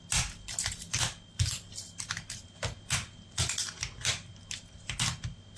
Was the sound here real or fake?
real